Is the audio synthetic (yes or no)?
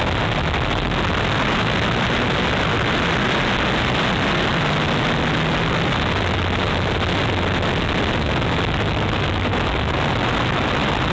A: no